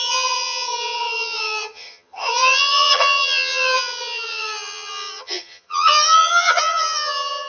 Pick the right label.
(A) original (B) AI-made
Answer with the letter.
B